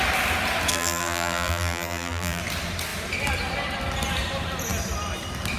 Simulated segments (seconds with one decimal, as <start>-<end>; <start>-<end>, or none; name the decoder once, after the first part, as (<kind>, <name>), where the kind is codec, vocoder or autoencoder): 0.7-2.4 (vocoder, BigVGAN v2)